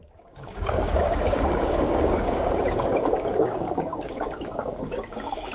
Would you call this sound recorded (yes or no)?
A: no